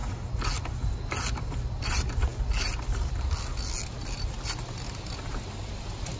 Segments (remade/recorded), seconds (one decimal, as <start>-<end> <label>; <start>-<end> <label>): 0.0-6.2 recorded